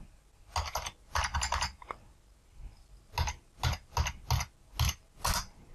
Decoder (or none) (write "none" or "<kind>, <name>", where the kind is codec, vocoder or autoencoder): none